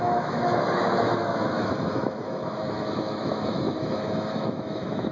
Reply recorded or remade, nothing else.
remade